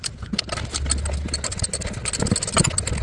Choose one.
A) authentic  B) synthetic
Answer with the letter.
A